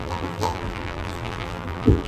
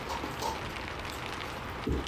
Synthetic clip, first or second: first